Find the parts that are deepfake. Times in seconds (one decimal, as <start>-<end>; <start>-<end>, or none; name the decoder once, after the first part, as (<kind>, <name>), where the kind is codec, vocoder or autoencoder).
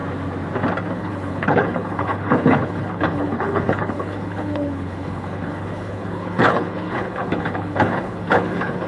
0.9-8.9 (codec, HILCodec)